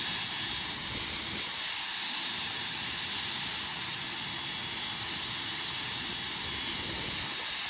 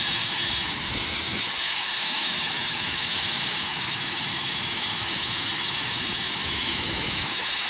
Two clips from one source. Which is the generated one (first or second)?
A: second